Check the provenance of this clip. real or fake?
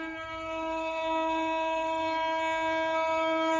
fake